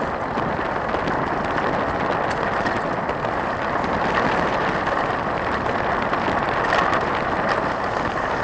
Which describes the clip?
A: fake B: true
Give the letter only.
B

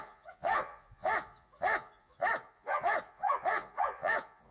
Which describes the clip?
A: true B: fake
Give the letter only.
B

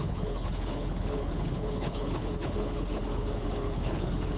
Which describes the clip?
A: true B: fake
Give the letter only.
B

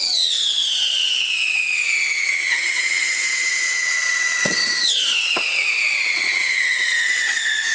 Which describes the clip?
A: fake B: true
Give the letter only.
A